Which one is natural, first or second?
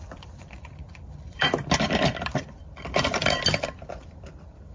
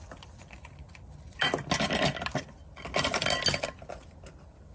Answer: second